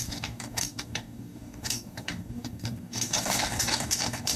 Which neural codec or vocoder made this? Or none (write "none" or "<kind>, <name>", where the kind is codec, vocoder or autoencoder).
codec, DAC